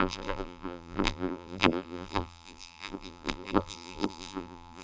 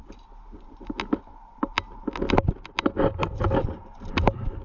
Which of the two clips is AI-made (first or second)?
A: first